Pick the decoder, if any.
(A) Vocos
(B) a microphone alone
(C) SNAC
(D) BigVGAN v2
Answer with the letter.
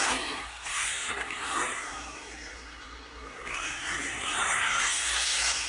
C